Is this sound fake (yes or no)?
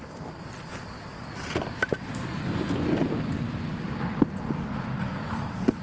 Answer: no